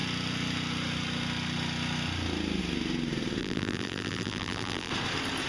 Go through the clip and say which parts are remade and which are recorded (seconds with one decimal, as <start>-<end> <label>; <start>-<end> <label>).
0.0-3.4 recorded; 3.4-4.9 remade; 4.9-5.5 recorded